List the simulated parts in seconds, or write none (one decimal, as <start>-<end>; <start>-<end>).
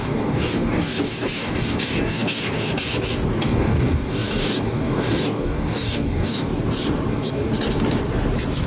0.0-2.7; 3.4-6.5; 7.1-7.5